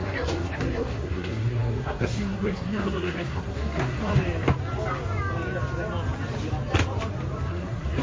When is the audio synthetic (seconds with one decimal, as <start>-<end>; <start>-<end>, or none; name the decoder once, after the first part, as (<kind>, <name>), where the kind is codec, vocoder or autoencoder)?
0.0-4.1 (codec, SNAC); 7.5-8.0